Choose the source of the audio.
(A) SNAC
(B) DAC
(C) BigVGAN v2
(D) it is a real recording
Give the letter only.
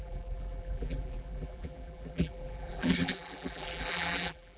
C